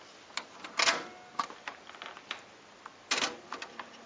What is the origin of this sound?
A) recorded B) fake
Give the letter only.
A